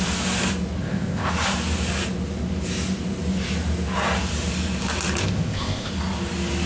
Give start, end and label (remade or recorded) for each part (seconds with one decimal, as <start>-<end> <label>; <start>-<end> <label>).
0.0-0.8 recorded; 0.8-1.3 remade; 1.3-5.2 recorded; 5.2-5.9 remade; 5.9-6.7 recorded